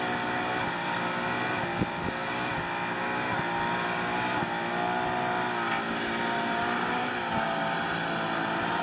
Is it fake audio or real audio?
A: real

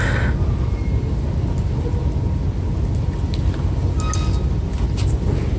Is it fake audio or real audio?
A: real